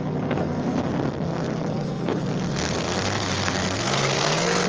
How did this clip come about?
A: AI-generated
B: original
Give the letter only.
A